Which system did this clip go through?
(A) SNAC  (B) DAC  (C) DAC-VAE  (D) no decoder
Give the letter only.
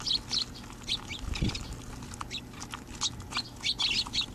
D